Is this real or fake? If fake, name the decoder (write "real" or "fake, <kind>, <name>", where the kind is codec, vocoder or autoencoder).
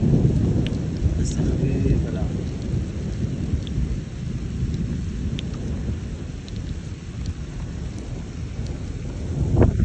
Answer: real